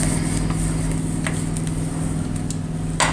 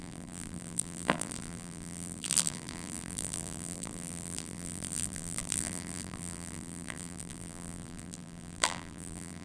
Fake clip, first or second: second